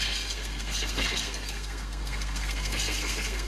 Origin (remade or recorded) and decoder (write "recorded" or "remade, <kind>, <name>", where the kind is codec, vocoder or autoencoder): remade, codec, SNAC